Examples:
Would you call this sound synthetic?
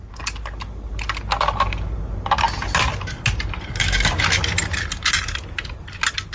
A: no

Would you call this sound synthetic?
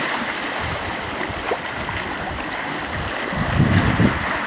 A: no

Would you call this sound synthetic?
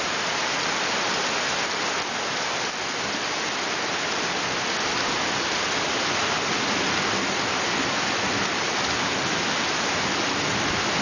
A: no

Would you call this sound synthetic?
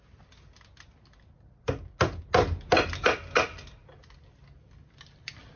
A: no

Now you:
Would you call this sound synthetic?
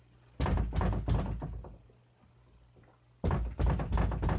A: no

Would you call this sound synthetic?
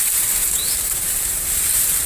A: yes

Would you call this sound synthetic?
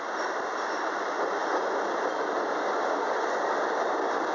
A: no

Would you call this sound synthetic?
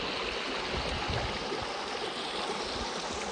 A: no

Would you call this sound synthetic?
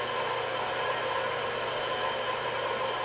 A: no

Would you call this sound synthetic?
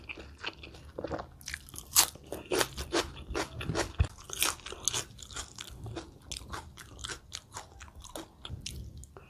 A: no